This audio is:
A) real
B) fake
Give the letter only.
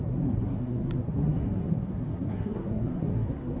B